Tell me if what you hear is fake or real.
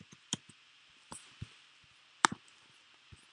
fake